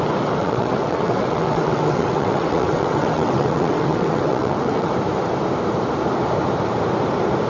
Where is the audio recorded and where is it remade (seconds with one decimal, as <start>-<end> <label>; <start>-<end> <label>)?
0.0-0.4 recorded; 0.4-4.9 remade; 4.9-7.5 recorded